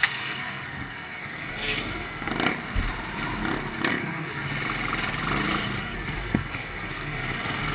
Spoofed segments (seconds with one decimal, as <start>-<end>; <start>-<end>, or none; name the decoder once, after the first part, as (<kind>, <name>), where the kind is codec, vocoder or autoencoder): 0.0-2.3 (codec, SNAC); 3.9-4.4; 5.8-7.7